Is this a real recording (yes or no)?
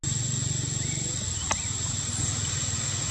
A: yes